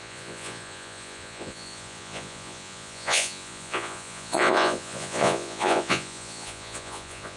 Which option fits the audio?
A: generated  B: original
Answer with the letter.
A